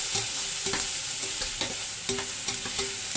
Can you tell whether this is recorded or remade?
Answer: recorded